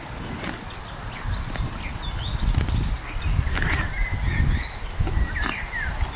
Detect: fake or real real